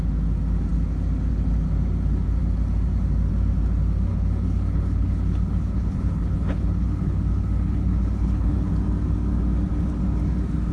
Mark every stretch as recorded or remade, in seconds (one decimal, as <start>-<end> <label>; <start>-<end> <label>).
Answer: 0.0-4.1 recorded; 4.1-8.7 remade; 8.7-10.7 recorded